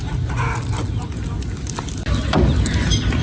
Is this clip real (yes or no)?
yes